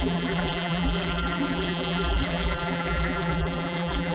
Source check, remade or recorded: remade